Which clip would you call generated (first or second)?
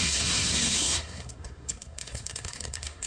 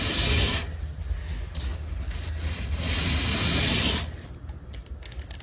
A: first